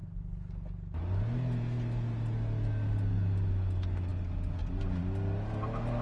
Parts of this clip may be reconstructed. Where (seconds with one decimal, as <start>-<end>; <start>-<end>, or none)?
none